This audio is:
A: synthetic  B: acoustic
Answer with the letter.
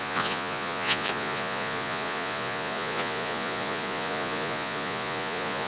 A